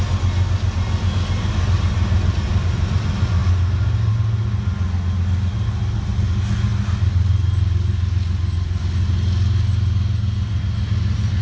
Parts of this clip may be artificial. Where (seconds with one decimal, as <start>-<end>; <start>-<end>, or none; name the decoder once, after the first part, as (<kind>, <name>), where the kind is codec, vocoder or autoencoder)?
none